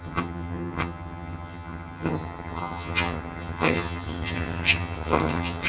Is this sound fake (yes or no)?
yes